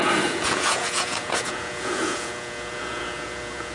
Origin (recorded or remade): remade